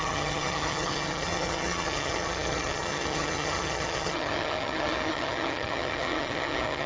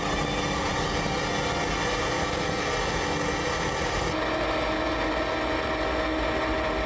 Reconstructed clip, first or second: first